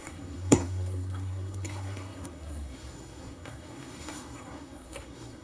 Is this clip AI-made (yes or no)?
yes